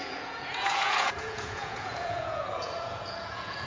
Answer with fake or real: fake